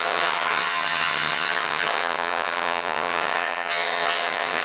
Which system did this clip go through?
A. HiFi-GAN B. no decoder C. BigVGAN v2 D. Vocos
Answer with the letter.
A